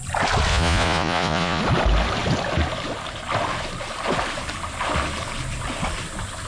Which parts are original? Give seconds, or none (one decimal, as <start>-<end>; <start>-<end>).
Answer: 0.0-0.5; 1.6-6.5